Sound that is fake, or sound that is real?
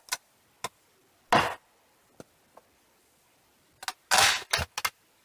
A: real